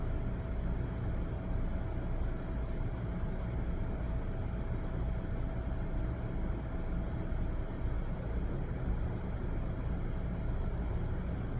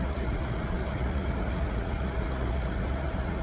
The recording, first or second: first